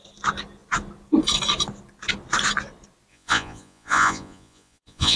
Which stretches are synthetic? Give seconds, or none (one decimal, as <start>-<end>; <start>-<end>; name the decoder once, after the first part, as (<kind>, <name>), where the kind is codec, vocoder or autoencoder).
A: 3.1-5.2 (vocoder, Vocos)